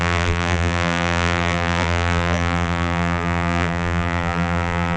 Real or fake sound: fake